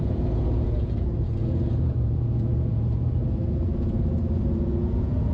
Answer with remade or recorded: remade